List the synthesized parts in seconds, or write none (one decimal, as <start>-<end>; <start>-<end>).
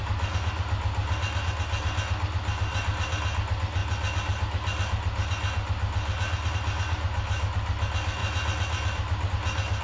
none